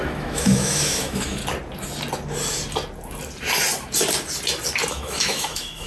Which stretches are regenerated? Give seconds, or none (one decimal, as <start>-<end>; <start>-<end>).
0.0-1.4; 4.9-5.9